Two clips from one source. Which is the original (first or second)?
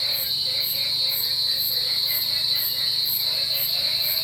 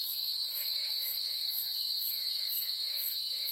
first